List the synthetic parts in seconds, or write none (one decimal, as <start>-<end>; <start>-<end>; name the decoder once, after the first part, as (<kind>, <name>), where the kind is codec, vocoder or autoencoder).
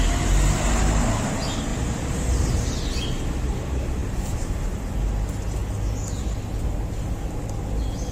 1.7-2.7 (vocoder, BigVGAN v2); 4.0-4.8